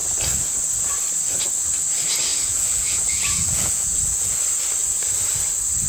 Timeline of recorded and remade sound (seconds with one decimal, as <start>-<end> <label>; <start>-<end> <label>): 0.0-2.3 recorded; 2.3-4.4 remade; 4.4-5.9 recorded